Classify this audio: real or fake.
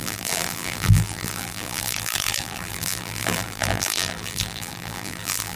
fake